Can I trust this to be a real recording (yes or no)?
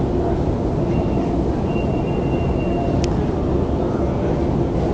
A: yes